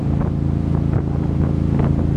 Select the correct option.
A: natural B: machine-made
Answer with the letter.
A